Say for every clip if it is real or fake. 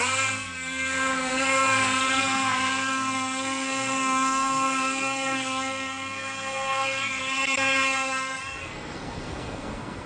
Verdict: fake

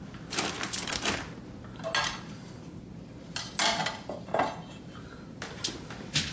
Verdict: real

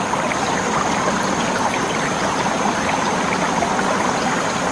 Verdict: real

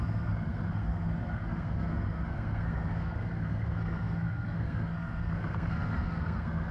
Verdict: fake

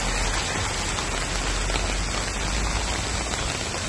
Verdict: real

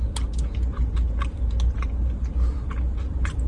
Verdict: real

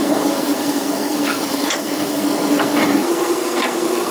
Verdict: fake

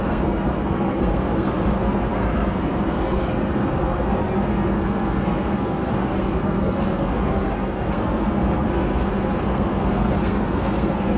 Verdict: fake